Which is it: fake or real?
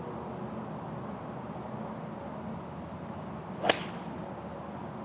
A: real